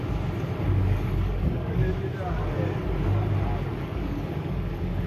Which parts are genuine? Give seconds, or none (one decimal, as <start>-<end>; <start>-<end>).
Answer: 0.0-0.8; 1.9-3.7